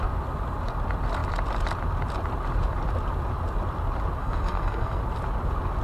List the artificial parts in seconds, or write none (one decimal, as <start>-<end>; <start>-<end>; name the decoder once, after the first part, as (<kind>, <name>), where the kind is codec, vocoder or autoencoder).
4.2-5.0 (codec, SNAC)